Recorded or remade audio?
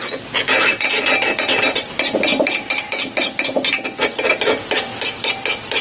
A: recorded